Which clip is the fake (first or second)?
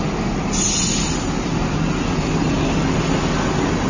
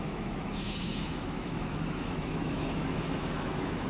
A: second